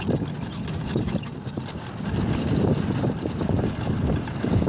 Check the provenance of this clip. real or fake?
real